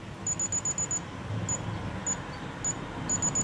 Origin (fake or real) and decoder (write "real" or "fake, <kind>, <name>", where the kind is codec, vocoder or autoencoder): real